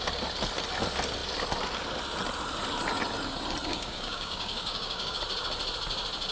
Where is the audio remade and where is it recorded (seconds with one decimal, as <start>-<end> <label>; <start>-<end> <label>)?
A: 0.0-3.7 recorded; 3.7-5.2 remade; 5.2-6.3 recorded